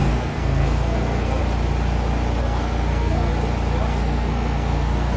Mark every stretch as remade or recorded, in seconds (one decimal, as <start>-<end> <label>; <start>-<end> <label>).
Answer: 0.0-1.4 remade; 1.4-2.4 recorded; 2.4-3.3 remade; 3.3-3.9 recorded; 3.9-5.2 remade